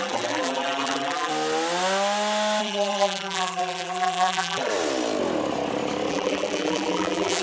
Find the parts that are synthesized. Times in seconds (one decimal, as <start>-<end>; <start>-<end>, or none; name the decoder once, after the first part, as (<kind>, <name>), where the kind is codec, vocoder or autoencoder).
0.0-1.3 (vocoder, BigVGAN v2); 2.6-4.7; 6.1-7.4